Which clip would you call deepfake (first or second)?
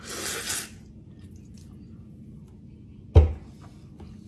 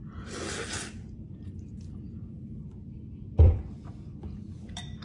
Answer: second